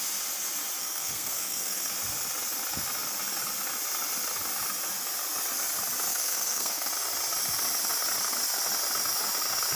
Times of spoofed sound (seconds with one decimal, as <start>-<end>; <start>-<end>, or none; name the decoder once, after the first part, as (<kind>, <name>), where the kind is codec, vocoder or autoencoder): 0.8-1.9 (codec, SNAC); 6.1-6.9